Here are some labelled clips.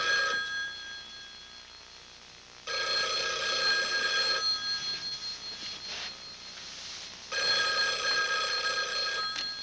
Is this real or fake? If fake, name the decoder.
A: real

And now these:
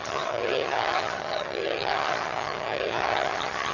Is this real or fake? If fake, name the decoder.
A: fake, vocoder, HiFi-GAN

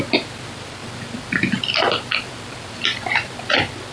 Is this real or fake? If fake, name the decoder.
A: fake, vocoder, BigVGAN v2